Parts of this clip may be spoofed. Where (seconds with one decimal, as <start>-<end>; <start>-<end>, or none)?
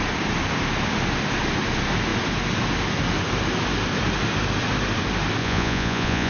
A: 5.4-6.3